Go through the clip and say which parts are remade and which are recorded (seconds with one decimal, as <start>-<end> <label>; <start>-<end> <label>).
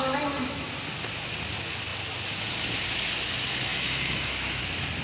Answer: 0.0-3.7 recorded; 3.7-4.6 remade; 4.6-5.0 recorded